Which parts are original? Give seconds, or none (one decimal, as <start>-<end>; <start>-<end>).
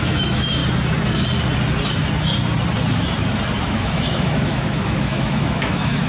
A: 0.6-3.6